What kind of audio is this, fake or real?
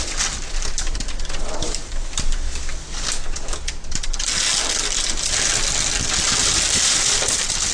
real